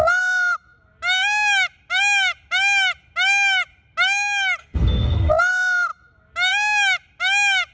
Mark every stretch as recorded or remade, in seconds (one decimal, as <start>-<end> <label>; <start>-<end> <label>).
0.0-4.6 recorded; 4.6-5.3 remade; 5.3-7.7 recorded